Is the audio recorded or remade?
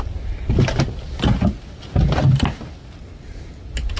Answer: recorded